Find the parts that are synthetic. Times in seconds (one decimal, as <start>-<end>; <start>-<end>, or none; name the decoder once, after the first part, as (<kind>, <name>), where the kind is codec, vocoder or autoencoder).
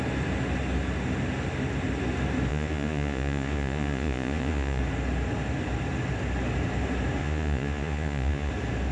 2.5-4.8 (vocoder, Vocos); 7.2-8.5